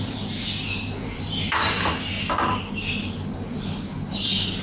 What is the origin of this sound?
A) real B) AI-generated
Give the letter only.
A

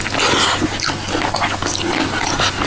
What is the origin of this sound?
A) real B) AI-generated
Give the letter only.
A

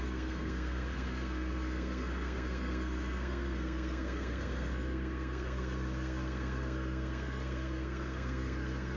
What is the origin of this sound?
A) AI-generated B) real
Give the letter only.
A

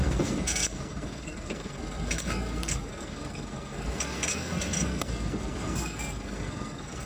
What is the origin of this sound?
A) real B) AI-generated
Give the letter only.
B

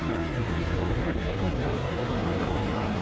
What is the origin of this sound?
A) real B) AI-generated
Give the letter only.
B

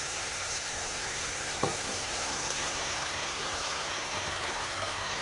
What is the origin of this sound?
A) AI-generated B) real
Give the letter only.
A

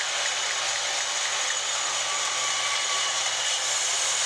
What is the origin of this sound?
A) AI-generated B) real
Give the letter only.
B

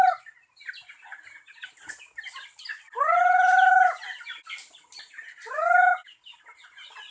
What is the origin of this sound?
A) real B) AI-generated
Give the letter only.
A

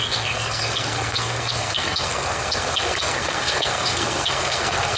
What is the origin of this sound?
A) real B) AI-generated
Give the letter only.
B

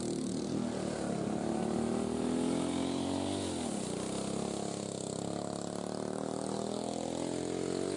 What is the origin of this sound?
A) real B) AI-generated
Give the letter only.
A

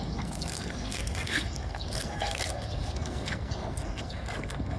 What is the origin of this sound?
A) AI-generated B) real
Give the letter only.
A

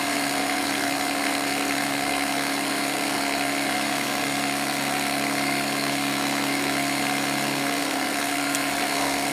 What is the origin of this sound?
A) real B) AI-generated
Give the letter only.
B